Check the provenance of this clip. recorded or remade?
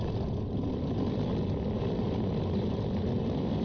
recorded